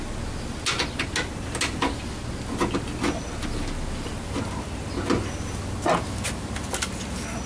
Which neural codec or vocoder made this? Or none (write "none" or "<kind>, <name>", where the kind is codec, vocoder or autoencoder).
none